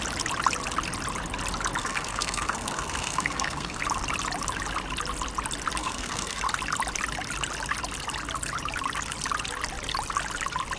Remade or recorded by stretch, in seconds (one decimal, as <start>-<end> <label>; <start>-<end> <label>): 0.0-1.8 recorded; 1.8-3.8 remade; 3.8-5.8 recorded; 5.8-6.4 remade; 6.4-10.8 recorded